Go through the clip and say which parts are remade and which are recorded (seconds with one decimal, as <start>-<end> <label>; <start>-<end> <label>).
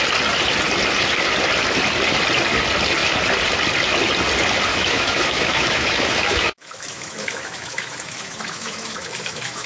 0.0-4.7 recorded; 4.7-9.7 remade